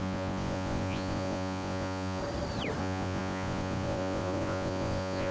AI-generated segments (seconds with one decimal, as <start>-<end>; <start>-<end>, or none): 0.0-2.2; 2.8-5.3